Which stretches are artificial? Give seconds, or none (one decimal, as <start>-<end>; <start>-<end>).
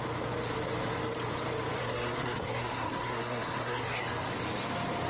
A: 1.8-4.0